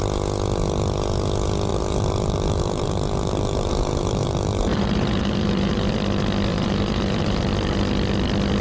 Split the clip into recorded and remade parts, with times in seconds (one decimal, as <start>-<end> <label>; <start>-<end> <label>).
0.0-1.7 recorded; 1.7-5.9 remade; 5.9-6.5 recorded; 6.5-7.4 remade; 7.4-8.6 recorded